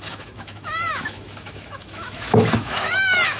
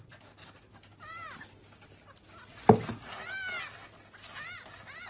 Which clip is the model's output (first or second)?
first